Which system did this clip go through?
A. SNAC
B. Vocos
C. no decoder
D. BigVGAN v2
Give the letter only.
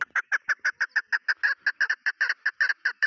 C